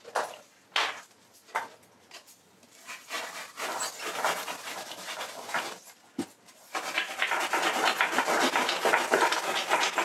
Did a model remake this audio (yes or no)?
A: no